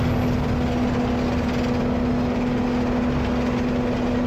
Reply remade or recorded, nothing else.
recorded